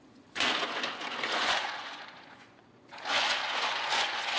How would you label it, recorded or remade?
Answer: remade